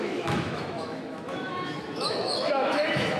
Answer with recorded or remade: remade